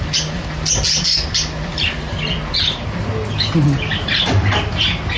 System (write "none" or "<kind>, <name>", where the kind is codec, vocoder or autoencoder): none